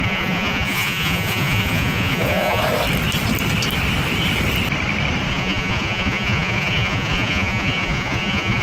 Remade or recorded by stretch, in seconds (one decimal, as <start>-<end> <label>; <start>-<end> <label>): 0.0-2.6 remade; 2.6-5.3 recorded; 5.3-8.6 remade